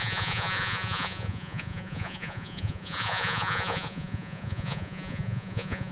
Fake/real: fake